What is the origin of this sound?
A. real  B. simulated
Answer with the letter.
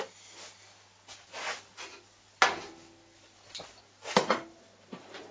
A